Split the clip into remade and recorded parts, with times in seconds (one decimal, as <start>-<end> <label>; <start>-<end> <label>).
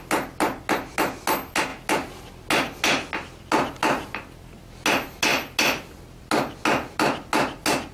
0.0-7.9 recorded